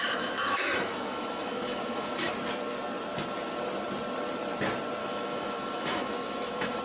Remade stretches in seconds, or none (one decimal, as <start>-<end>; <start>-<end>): 0.0-2.3; 5.0-6.8